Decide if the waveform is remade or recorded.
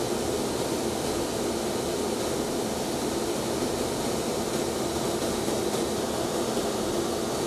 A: recorded